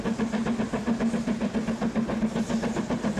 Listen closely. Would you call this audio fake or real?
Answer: real